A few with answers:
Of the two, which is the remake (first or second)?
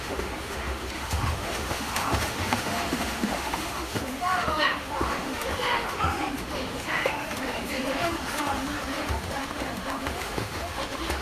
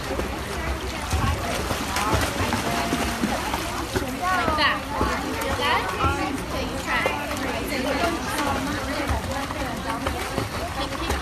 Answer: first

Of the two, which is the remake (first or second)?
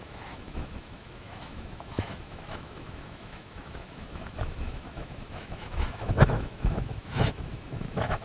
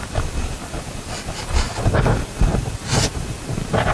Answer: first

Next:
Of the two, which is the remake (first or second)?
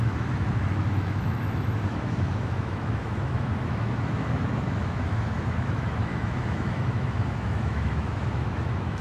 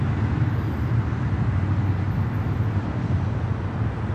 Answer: first